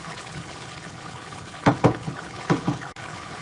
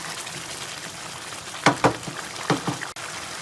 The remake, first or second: first